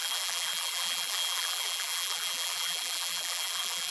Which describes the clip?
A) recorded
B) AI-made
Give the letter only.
B